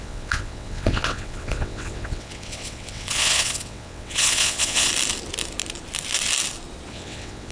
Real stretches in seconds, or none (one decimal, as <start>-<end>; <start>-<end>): 4.9-6.9

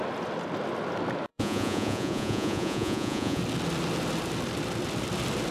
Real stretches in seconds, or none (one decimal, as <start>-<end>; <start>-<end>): 0.0-1.3; 3.4-5.5

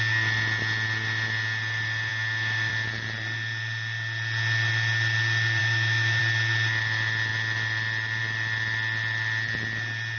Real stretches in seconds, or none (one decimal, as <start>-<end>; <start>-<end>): 0.0-5.6; 6.2-10.2